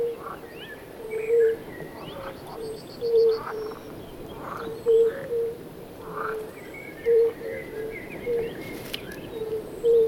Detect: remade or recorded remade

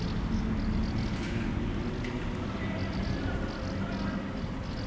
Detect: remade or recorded recorded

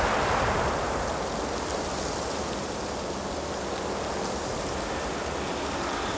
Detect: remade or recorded recorded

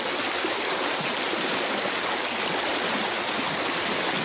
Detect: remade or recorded recorded